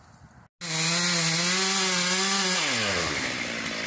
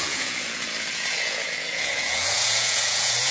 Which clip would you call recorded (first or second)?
first